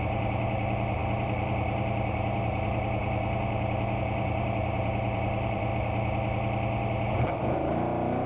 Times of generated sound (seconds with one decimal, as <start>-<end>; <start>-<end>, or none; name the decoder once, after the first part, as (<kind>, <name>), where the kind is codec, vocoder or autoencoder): 0.0-5.7 (vocoder, BigVGAN v2); 7.4-8.3